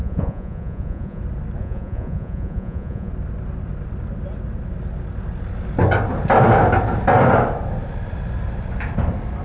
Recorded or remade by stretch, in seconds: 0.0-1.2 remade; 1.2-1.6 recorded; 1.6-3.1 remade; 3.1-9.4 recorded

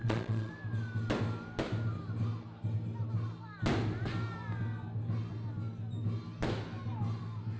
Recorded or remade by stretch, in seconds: 0.0-0.5 remade; 0.5-7.6 recorded

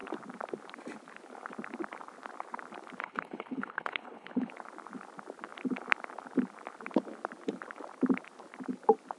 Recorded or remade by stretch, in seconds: 0.0-3.0 recorded; 3.0-4.5 remade; 4.5-9.2 recorded

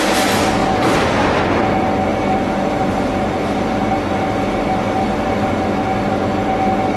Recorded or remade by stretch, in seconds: 0.0-0.6 recorded; 0.6-1.4 remade; 1.4-2.1 recorded; 2.1-5.5 remade; 5.5-7.0 recorded

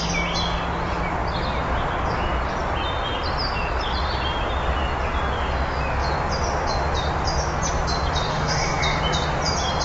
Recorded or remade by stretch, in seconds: 0.0-8.3 recorded; 8.3-8.8 remade; 8.8-9.8 recorded

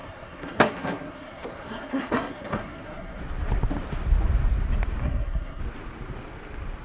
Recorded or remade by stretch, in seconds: 0.0-3.2 remade; 3.2-5.0 recorded; 5.0-5.6 remade; 5.6-6.8 recorded